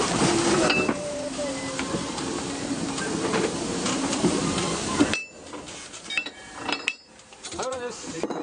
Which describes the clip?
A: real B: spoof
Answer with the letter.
B